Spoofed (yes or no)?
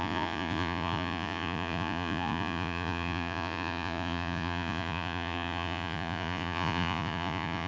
yes